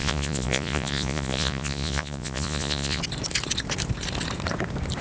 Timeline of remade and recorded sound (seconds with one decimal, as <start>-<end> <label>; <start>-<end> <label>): 0.0-3.0 remade; 3.0-5.0 recorded